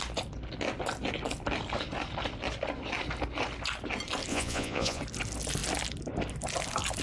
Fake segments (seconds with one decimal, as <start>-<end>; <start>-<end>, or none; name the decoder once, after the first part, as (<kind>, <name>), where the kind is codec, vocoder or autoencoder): 4.3-5.0 (vocoder, Vocos)